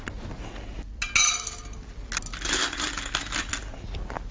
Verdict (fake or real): real